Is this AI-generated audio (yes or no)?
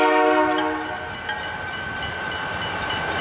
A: no